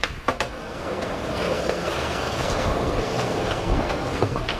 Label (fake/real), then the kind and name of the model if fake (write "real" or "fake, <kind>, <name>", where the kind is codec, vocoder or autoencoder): fake, codec, SNAC